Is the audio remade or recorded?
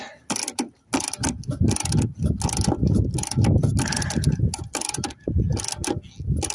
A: recorded